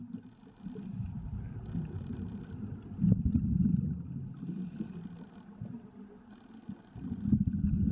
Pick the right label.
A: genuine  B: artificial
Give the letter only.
A